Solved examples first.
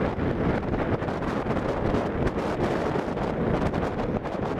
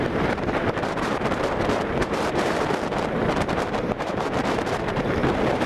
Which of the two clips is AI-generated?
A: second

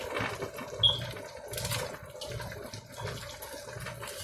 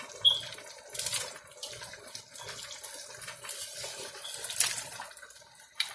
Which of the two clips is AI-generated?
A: second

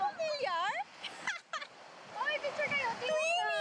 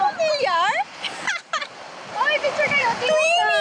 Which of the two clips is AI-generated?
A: second